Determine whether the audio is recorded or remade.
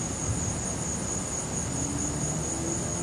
recorded